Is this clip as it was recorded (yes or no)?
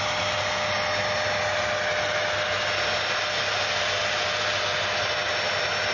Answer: yes